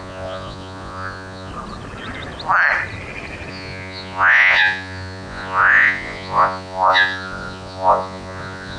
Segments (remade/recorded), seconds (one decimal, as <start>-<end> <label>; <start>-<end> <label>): 0.0-1.5 remade; 1.5-3.5 recorded; 3.5-8.8 remade